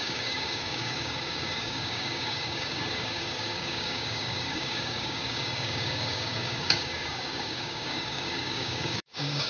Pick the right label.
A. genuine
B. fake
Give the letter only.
B